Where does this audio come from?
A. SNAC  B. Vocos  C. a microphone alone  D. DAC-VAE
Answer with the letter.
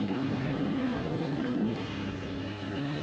A